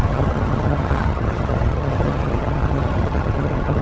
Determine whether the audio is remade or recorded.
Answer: remade